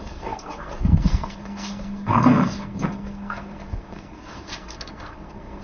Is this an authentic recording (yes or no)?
no